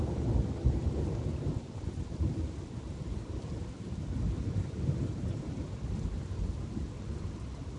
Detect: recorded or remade recorded